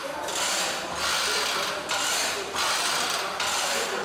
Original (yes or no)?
yes